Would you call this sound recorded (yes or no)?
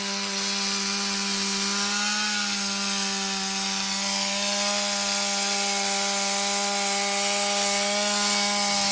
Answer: yes